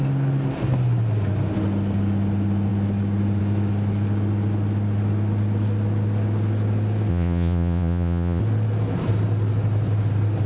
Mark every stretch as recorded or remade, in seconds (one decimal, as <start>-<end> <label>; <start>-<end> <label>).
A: 0.0-7.1 recorded; 7.1-8.4 remade; 8.4-10.5 recorded